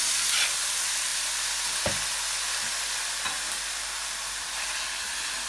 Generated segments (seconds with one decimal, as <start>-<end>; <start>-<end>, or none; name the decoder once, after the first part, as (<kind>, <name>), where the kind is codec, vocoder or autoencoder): 1.1-1.9 (vocoder, BigVGAN v2)